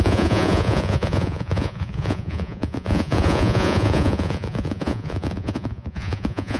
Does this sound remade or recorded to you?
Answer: remade